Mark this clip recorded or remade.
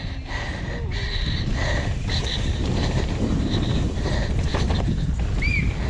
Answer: recorded